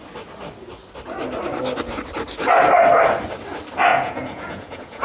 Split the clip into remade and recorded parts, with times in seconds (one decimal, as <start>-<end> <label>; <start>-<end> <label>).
0.0-3.9 recorded; 3.9-5.0 remade